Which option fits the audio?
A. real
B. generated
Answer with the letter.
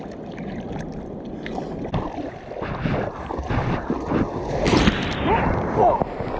A